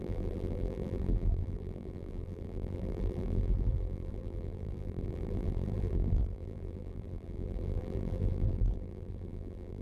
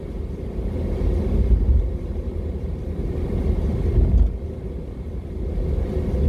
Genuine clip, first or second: second